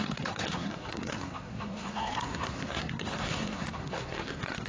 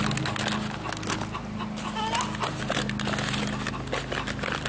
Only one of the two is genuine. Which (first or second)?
second